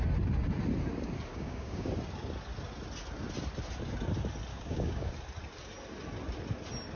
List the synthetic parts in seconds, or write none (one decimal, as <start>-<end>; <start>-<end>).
1.3-1.9; 4.5-5.1